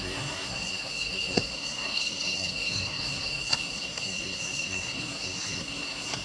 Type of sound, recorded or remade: remade